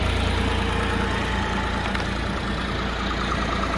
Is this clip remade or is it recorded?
recorded